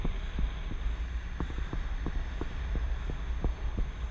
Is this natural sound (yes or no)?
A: yes